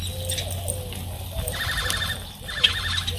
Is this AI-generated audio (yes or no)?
no